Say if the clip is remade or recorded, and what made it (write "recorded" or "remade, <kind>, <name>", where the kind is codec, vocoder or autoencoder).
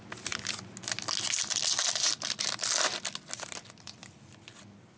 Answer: recorded